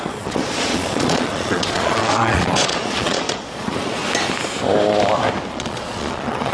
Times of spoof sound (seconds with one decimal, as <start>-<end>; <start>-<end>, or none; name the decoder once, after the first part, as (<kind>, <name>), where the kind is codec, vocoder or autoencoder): 0.0-4.0 (vocoder, Vocos); 5.5-6.5